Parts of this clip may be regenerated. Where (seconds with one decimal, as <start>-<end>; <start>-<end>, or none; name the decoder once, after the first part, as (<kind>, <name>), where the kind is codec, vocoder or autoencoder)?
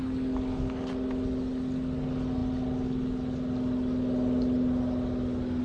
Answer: none